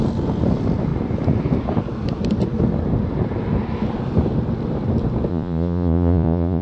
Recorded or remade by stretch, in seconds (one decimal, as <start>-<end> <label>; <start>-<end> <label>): 0.0-5.3 recorded; 5.3-6.6 remade